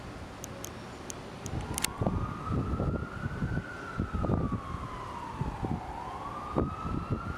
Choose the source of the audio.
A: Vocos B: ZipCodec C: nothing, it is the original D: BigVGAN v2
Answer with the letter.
C